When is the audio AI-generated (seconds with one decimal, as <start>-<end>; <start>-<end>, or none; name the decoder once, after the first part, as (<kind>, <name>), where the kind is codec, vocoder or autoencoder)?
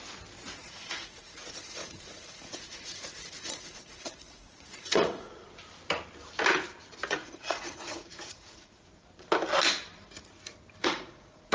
0.6-5.5 (vocoder, Vocos); 7.2-8.9; 10.8-11.5